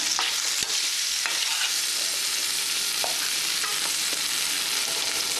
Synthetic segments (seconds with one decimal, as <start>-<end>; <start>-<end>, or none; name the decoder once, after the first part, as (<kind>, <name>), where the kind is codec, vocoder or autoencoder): none